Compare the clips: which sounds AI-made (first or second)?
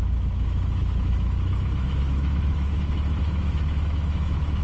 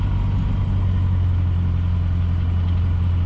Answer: first